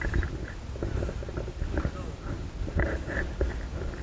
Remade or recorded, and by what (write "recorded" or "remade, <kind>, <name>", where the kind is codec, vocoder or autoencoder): recorded